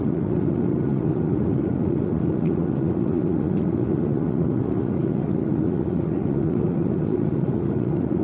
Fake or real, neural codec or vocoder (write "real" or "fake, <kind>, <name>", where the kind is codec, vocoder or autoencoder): fake, vocoder, Vocos